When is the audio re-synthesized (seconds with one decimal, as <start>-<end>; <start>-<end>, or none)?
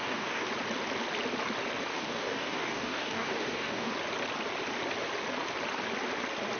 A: 0.0-0.5; 1.9-3.9